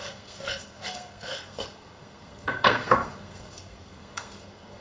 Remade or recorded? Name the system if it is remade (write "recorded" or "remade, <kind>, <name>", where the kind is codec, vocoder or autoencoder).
remade, codec, SNAC